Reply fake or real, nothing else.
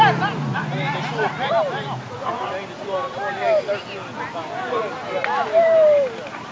fake